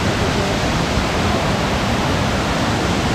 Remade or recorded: recorded